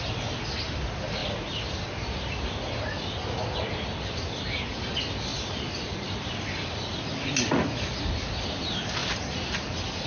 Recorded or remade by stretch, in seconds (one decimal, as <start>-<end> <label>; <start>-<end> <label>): 0.0-5.3 recorded; 5.3-8.2 remade; 8.2-9.0 recorded; 9.0-9.5 remade; 9.5-10.1 recorded